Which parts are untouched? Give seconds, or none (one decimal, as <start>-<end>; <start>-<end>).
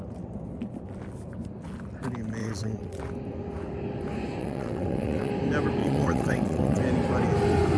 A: 0.0-2.4; 3.0-4.4; 5.3-5.8; 6.8-7.8